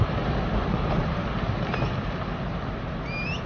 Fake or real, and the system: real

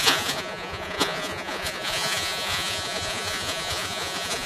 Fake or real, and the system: fake, vocoder, Vocos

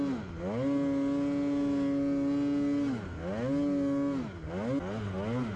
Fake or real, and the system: real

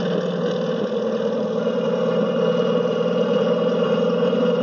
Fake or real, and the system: fake, vocoder, BigVGAN v2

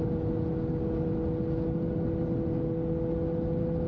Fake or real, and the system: real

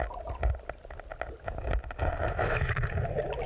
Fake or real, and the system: real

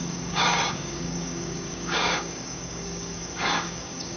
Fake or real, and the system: fake, codec, DAC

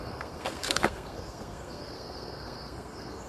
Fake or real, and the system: fake, codec, SNAC